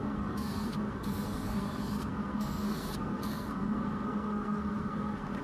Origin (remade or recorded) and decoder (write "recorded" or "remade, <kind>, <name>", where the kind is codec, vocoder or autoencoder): remade, codec, SNAC